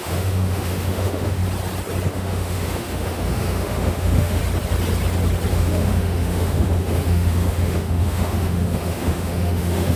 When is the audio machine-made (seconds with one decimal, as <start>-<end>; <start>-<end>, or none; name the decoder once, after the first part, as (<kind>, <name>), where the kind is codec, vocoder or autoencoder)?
0.0-1.4 (autoencoder, DAC-VAE); 2.1-4.4; 5.5-10.0